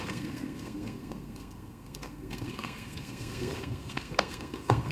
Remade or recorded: remade